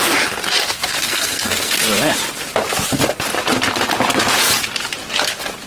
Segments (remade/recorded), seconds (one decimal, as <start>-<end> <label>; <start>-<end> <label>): 0.0-0.6 recorded; 0.6-1.7 remade; 1.7-5.7 recorded